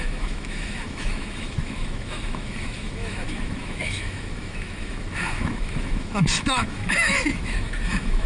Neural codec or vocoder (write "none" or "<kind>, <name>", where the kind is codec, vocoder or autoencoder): autoencoder, DAC-VAE